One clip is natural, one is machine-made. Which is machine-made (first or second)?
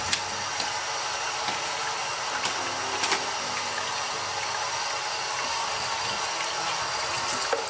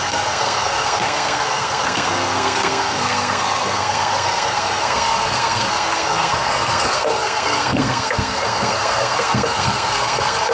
second